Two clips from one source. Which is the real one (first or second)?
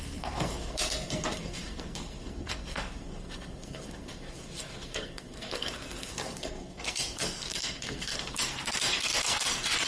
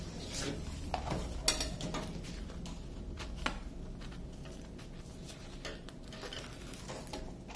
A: second